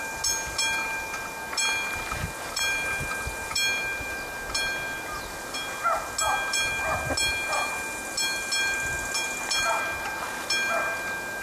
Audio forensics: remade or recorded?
recorded